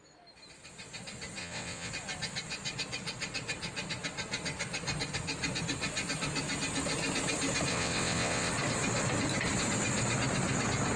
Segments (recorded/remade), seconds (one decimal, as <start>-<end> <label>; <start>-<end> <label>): 0.0-1.4 recorded; 1.4-1.9 remade; 1.9-7.7 recorded; 7.7-8.5 remade; 8.5-11.0 recorded